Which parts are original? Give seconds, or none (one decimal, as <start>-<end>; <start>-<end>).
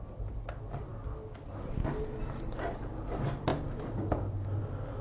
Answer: 0.0-5.0